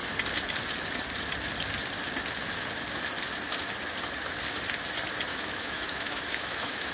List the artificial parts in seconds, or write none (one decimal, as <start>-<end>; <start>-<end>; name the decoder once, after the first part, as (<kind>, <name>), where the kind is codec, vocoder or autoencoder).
5.3-6.9 (autoencoder, DAC-VAE)